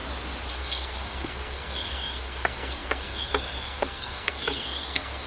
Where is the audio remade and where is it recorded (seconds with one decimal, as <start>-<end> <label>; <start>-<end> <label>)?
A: 0.0-0.5 recorded; 0.5-5.3 remade